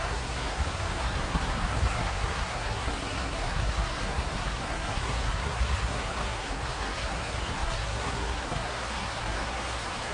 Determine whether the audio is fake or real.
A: fake